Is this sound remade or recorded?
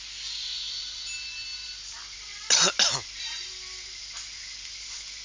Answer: recorded